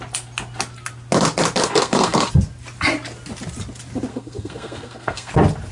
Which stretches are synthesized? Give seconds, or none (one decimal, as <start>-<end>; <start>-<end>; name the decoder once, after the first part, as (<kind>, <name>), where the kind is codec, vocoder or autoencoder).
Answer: 1.6-2.3 (codec, SNAC); 4.1-5.3